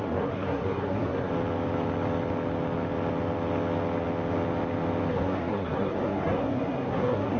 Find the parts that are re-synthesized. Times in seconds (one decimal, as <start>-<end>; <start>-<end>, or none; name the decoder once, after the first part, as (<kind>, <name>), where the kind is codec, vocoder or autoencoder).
0.0-1.3 (codec, SNAC); 5.1-7.4

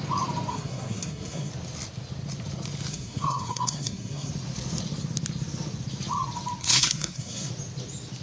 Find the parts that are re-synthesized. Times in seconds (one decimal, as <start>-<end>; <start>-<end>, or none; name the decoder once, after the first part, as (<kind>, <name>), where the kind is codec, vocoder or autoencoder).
0.5-1.5 (codec, SNAC); 2.9-4.3; 6.6-7.5

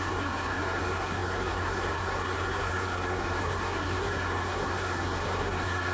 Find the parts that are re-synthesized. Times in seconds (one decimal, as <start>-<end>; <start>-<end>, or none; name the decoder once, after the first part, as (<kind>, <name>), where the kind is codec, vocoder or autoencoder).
0.0-5.9 (codec, SNAC)

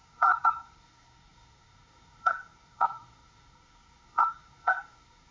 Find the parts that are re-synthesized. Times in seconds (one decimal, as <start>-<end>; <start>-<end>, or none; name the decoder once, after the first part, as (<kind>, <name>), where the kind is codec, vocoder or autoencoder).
0.0-5.3 (codec, SNAC)